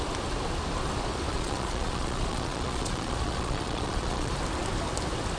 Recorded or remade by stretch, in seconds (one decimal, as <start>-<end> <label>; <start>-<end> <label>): 0.0-1.3 recorded; 1.3-4.3 remade; 4.3-5.4 recorded